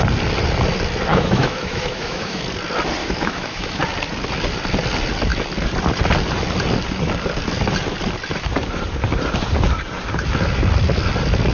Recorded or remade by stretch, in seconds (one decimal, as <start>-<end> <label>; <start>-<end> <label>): 0.0-1.1 recorded; 1.1-2.4 remade; 2.4-3.0 recorded; 3.0-3.8 remade; 3.8-11.5 recorded